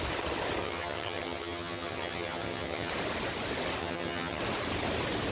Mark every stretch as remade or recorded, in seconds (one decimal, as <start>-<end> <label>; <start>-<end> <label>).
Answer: 0.0-0.6 recorded; 0.6-2.9 remade; 2.9-3.8 recorded; 3.8-4.4 remade; 4.4-5.3 recorded